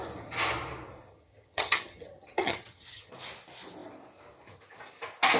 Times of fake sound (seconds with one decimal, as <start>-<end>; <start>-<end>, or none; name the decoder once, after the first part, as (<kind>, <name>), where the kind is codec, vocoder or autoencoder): 1.1-3.1 (vocoder, HiFi-GAN)